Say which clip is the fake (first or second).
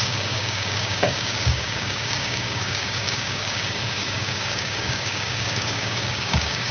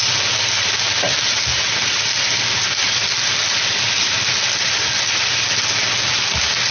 first